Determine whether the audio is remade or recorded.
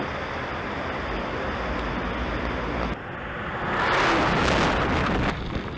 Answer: recorded